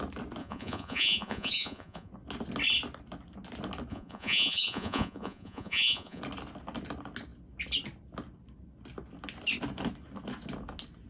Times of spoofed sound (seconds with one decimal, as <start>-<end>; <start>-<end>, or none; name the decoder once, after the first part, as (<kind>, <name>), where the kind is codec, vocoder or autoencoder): 0.4-2.1 (vocoder, Vocos); 3.9-6.2